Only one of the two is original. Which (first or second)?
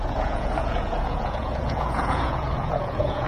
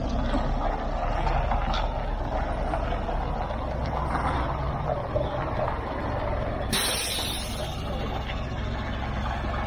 second